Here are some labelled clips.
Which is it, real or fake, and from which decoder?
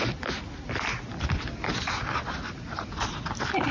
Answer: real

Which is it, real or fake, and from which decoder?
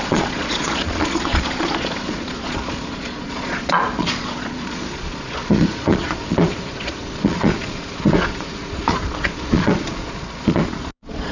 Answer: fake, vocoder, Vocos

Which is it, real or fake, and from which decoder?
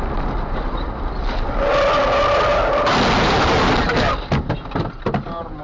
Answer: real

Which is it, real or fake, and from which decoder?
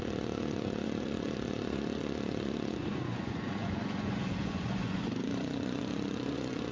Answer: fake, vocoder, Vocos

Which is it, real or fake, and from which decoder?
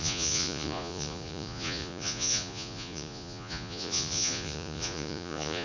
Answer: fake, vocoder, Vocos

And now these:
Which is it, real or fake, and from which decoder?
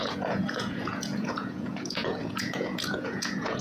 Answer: fake, vocoder, Vocos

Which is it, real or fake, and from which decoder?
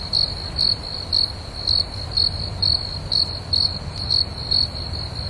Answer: real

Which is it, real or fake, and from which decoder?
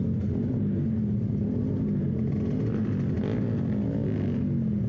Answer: real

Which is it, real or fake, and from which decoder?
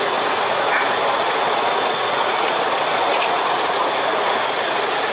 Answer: fake, vocoder, Vocos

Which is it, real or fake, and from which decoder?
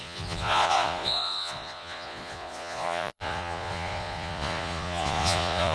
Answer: fake, vocoder, Vocos